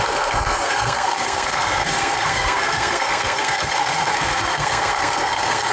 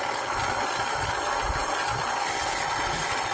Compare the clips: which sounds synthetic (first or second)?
first